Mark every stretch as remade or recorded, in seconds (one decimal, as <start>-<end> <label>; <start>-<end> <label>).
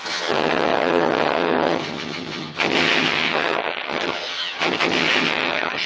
0.0-5.9 remade